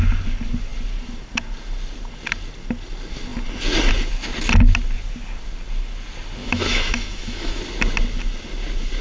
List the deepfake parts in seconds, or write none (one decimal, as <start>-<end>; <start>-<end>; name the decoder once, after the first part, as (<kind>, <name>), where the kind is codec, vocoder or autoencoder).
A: 6.4-7.6 (autoencoder, DAC-VAE)